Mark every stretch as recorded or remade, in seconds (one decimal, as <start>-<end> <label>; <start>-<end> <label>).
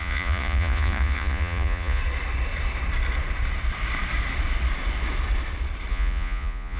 0.0-2.0 remade; 2.0-5.9 recorded; 5.9-6.8 remade